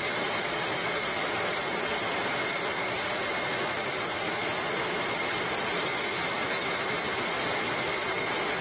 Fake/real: real